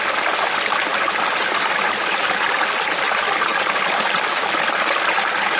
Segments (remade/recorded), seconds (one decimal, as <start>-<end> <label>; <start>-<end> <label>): 0.0-3.5 recorded; 3.5-4.1 remade; 4.1-5.6 recorded